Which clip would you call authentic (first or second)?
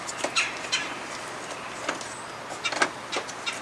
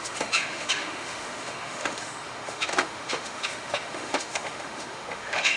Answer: first